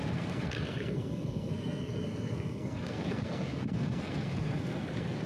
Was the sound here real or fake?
fake